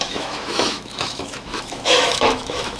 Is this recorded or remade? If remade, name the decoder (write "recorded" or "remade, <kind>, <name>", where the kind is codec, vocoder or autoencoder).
remade, autoencoder, DAC-VAE